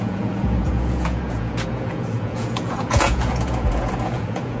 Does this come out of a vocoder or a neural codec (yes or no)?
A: yes